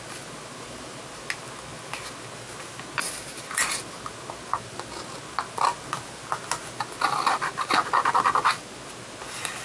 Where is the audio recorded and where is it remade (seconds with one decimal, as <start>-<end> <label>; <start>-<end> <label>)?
0.0-9.6 recorded